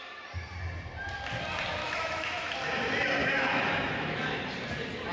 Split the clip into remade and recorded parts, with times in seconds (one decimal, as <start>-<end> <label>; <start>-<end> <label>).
0.0-1.8 recorded; 1.8-2.5 remade; 2.5-3.2 recorded; 3.2-4.4 remade; 4.4-5.1 recorded